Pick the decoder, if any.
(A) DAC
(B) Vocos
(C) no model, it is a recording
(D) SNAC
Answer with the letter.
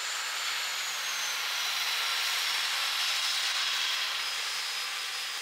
C